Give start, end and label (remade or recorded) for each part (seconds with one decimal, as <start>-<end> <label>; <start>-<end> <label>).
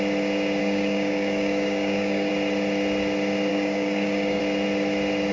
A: 0.0-0.6 recorded; 0.6-2.3 remade; 2.3-3.5 recorded; 3.5-4.4 remade; 4.4-5.3 recorded